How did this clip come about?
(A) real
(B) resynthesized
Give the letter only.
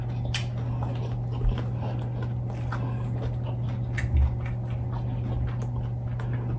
A